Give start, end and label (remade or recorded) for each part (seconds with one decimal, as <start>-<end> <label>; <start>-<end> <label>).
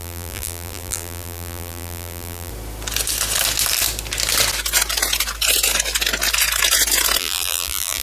0.0-2.5 remade; 2.5-7.2 recorded; 7.2-8.0 remade